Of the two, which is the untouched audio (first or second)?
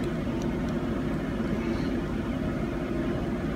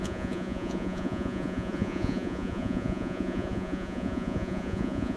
first